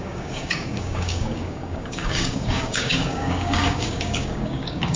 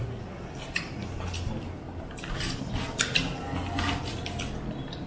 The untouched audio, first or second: second